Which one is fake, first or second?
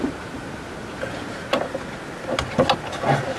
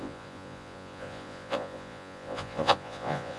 second